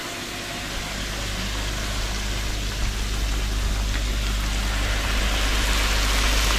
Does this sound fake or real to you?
real